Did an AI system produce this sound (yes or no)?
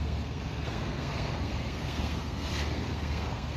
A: yes